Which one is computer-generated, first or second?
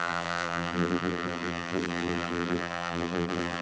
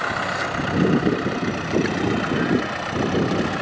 first